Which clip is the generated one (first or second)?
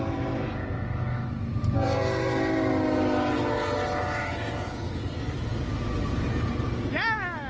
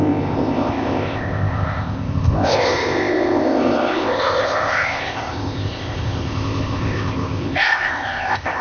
second